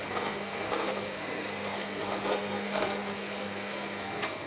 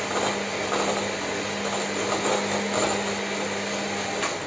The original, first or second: second